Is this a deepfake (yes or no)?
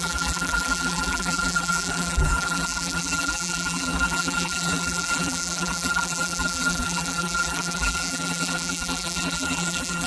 yes